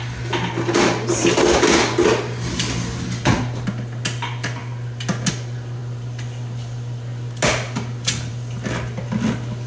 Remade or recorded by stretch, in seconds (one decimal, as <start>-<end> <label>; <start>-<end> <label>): 0.0-9.7 recorded